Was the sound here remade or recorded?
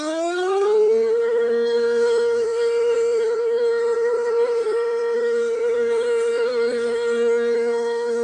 remade